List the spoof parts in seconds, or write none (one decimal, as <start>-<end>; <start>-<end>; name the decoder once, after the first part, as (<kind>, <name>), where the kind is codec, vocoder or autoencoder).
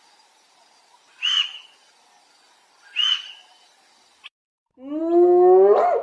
none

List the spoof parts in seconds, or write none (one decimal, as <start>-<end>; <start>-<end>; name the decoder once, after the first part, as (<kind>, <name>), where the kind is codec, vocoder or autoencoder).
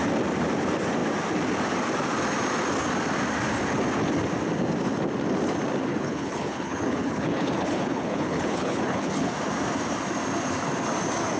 5.9-9.3 (codec, HILCodec)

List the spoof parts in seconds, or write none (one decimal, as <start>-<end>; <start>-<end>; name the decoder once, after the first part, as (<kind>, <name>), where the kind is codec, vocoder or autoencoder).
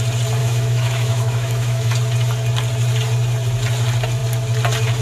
0.4-1.9 (autoencoder, DAC-VAE)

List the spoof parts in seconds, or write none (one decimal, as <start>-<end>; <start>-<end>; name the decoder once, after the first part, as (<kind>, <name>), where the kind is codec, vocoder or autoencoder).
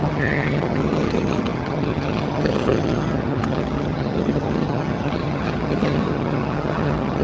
0.0-7.2 (vocoder, HiFi-GAN)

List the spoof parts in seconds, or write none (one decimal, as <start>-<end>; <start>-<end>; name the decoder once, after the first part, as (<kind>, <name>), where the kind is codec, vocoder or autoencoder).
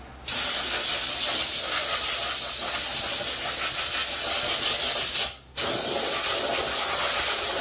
none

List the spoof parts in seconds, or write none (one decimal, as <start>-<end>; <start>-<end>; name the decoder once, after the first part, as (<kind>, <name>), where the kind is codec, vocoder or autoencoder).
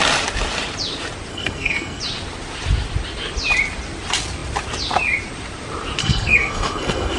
1.3-2.0 (codec, SNAC); 6.0-7.2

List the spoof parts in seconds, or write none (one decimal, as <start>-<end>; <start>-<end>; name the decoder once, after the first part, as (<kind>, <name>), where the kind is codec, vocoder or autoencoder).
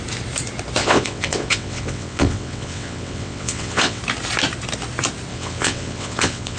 0.8-4.0 (vocoder, WaveNeXt); 5.3-6.6